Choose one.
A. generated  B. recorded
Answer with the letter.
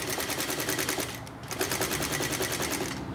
B